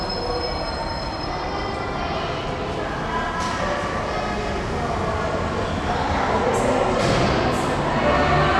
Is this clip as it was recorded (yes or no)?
yes